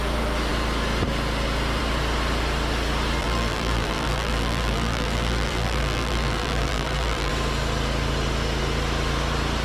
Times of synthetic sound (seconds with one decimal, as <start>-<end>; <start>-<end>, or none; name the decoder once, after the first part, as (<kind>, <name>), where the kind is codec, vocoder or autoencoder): 3.2-7.3 (vocoder, BigVGAN v2)